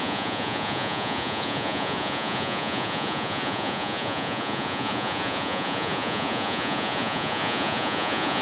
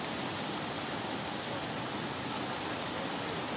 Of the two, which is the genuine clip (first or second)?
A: second